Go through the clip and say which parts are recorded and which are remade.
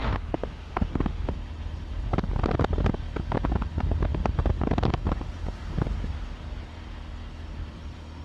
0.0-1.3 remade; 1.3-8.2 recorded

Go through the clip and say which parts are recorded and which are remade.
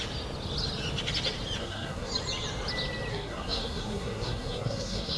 0.0-1.6 recorded; 1.6-2.1 remade; 2.1-3.1 recorded; 3.1-5.2 remade